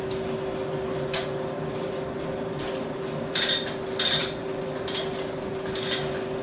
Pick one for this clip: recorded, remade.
recorded